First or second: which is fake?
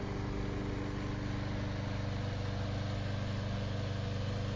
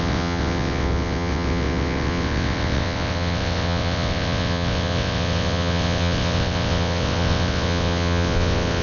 second